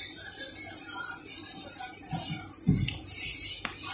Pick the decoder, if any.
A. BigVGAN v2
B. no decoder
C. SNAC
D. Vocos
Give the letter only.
B